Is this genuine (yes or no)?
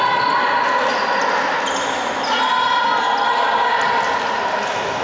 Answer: yes